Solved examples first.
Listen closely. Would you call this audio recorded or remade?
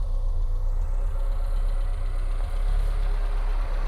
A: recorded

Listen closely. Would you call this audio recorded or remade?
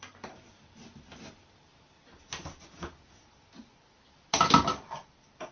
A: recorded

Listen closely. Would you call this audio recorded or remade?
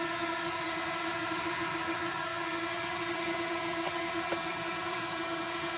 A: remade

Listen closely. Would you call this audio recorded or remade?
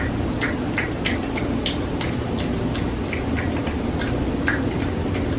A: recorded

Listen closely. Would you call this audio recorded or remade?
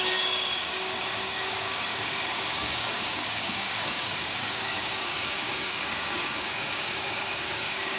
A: remade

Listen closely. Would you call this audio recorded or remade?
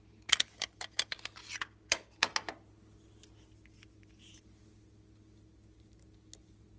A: recorded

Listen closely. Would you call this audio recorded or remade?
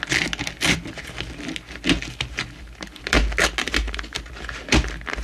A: recorded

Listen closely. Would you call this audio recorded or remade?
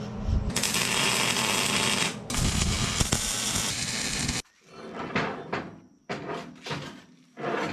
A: recorded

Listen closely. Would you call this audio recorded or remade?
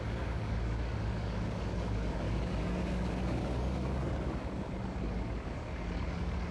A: remade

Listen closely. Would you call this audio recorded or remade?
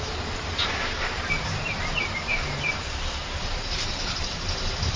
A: remade